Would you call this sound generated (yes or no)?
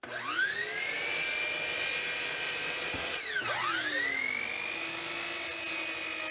no